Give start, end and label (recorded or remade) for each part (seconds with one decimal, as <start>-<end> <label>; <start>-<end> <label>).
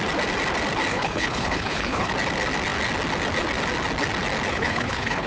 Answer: 0.0-0.9 recorded; 0.9-2.1 remade; 2.1-4.5 recorded; 4.5-5.3 remade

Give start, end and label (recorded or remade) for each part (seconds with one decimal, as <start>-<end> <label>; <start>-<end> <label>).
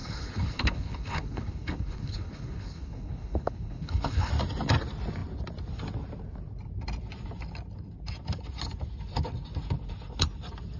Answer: 0.0-4.3 remade; 4.3-10.8 recorded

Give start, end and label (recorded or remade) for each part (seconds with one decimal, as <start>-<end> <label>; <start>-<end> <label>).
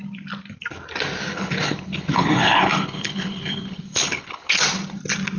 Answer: 0.0-1.3 recorded; 1.3-4.5 remade; 4.5-5.4 recorded